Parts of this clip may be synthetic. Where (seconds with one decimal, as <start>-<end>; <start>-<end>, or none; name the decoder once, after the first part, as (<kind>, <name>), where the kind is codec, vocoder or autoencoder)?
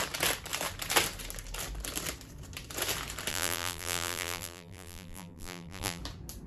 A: 3.3-6.0 (vocoder, BigVGAN v2)